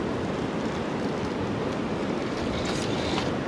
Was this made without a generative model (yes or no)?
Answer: yes